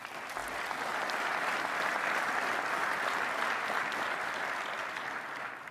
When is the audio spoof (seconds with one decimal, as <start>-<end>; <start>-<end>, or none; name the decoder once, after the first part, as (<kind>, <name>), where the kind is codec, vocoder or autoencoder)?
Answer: none